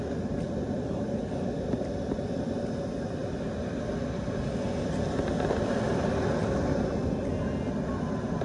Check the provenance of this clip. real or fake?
real